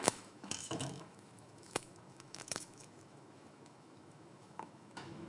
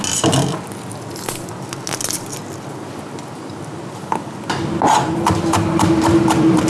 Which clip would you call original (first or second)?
second